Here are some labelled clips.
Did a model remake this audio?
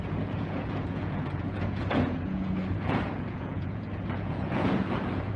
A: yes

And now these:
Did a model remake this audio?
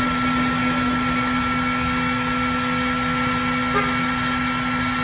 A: no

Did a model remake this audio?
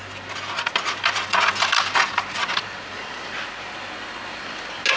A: no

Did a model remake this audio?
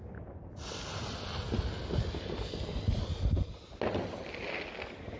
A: no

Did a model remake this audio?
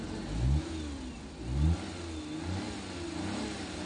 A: no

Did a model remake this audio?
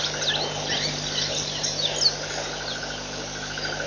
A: no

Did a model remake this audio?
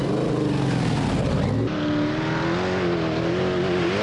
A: no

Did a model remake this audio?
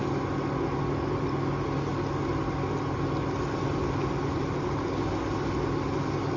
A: no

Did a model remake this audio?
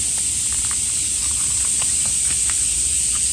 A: no